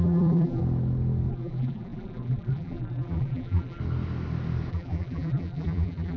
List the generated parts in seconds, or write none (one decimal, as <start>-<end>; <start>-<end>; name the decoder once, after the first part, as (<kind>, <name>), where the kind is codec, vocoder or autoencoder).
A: 0.0-0.6 (vocoder, BigVGAN v2); 1.3-3.8; 4.7-6.2